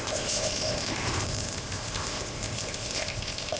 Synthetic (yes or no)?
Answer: yes